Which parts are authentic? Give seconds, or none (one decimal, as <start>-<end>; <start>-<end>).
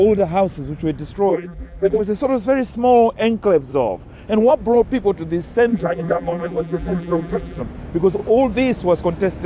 0.0-1.3; 2.0-5.7; 7.6-9.5